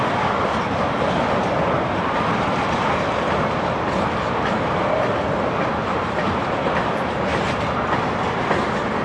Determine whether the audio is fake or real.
real